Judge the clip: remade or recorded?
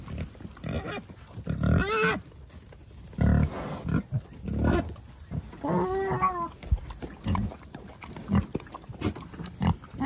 recorded